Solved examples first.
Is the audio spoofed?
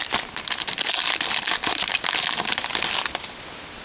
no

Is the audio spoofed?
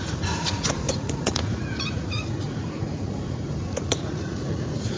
yes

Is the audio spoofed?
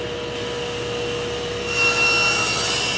no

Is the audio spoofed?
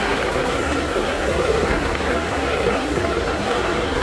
yes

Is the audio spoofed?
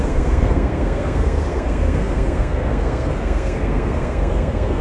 yes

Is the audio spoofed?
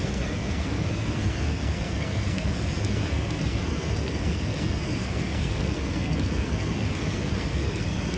yes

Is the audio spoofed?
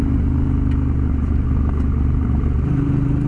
no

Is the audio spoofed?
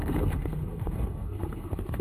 yes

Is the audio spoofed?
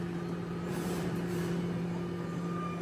yes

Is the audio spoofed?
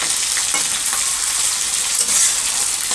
no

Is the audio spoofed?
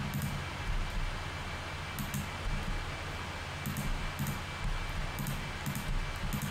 no